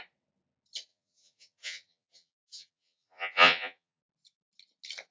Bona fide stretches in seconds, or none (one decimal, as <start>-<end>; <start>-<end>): 0.0-0.9; 4.0-5.1